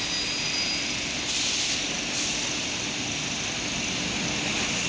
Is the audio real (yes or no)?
yes